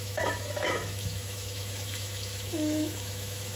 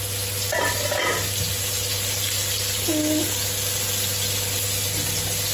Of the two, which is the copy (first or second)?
first